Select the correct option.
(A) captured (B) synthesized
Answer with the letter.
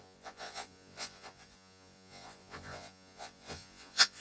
B